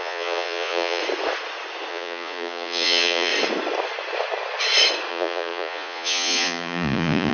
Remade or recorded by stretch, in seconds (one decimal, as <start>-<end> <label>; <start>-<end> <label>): 0.0-1.0 remade; 1.0-1.9 recorded; 1.9-3.3 remade; 3.3-5.1 recorded; 5.1-7.3 remade